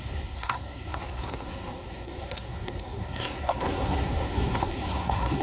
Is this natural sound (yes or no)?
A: no